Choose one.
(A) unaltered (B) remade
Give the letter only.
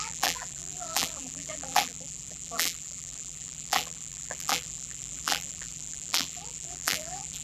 B